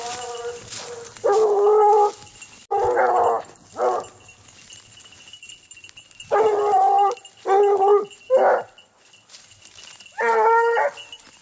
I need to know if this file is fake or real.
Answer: real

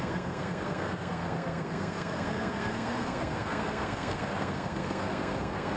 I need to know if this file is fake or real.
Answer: fake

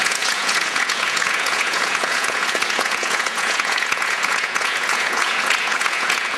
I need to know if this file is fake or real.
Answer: fake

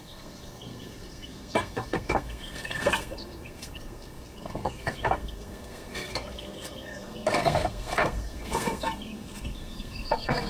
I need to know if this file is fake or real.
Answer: fake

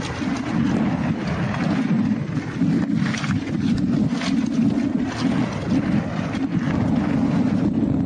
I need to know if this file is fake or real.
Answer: real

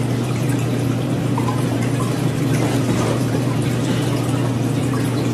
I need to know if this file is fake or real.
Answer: fake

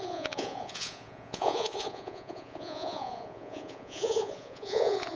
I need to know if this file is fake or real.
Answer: fake